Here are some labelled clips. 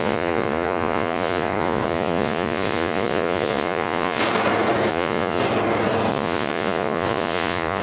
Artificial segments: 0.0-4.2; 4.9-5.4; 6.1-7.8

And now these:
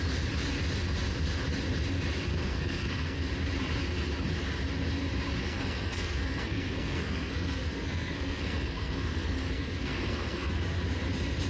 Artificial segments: 2.3-3.3; 5.4-10.5

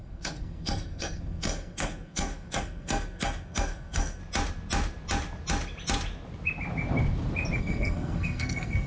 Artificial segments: 0.0-4.2; 7.6-8.9